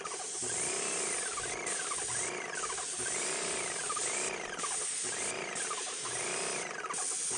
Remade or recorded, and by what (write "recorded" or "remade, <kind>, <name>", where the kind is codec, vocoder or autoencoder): recorded